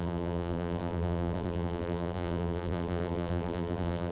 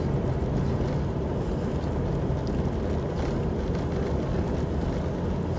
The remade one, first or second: first